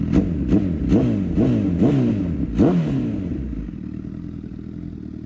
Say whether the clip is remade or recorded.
recorded